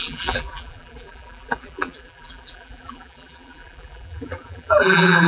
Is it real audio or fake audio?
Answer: fake